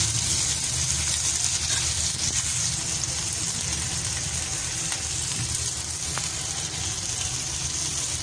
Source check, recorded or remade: recorded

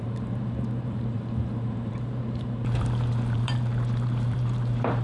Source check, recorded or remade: remade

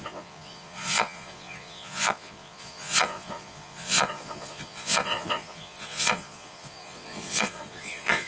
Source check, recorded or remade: remade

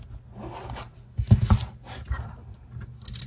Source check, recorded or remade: recorded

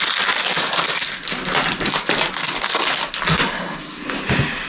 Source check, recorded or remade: recorded